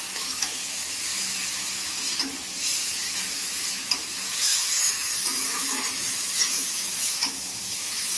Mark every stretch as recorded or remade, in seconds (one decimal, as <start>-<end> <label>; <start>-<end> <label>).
0.0-8.2 remade